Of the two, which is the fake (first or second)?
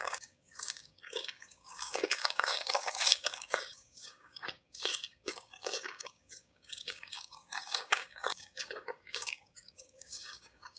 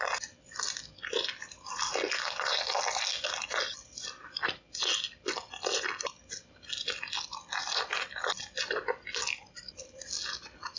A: first